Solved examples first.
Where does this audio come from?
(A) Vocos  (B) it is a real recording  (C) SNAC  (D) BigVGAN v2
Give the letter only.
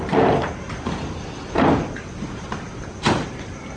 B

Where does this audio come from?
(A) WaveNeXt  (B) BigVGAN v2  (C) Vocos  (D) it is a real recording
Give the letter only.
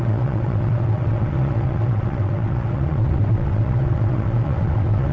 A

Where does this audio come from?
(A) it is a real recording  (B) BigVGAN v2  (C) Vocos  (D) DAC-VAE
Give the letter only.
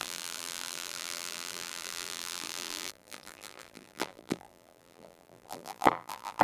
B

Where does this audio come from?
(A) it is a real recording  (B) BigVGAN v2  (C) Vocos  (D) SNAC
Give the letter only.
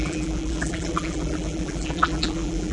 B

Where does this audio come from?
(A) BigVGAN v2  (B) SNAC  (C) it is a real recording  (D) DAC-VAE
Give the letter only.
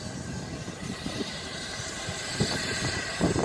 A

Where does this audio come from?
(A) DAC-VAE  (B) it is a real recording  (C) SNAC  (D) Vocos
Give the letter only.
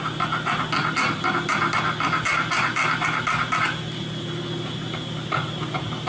B